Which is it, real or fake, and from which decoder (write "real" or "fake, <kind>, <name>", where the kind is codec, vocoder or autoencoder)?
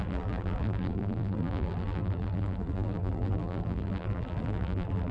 fake, vocoder, BigVGAN v2